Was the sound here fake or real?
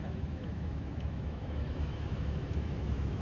fake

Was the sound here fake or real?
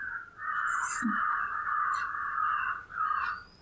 real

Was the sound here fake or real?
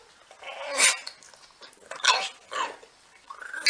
real